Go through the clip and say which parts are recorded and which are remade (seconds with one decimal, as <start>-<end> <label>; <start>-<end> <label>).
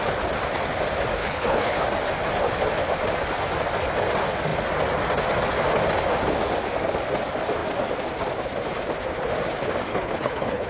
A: 0.0-1.2 recorded; 1.2-1.8 remade; 1.8-9.9 recorded; 9.9-10.7 remade